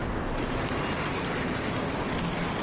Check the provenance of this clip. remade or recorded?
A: recorded